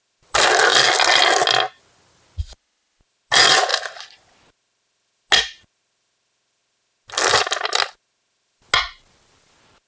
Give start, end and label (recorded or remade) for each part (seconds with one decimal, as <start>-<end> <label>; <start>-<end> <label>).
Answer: 0.0-9.9 recorded